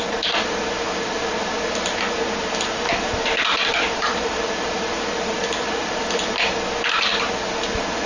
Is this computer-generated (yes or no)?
no